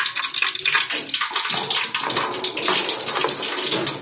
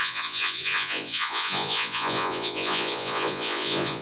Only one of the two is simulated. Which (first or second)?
second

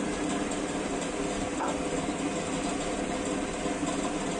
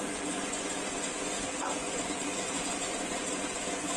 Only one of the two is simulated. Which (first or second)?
second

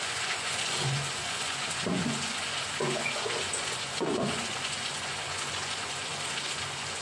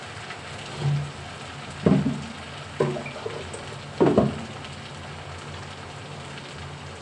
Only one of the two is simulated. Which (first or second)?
first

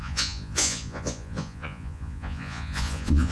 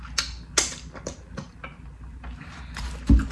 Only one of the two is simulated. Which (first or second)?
first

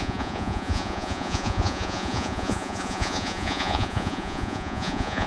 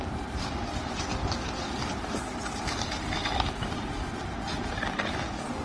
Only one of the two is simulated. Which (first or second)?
first